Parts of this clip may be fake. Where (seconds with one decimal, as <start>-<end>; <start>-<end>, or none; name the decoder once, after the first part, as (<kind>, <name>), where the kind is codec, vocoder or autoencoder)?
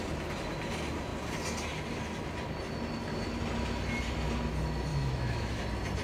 4.9-5.6 (autoencoder, DAC-VAE)